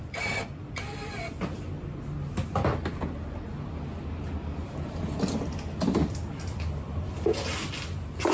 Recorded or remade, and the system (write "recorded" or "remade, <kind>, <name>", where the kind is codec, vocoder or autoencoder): recorded